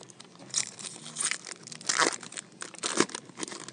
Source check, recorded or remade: recorded